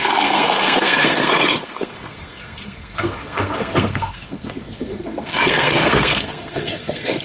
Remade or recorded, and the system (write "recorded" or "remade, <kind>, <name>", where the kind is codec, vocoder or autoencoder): remade, codec, SNAC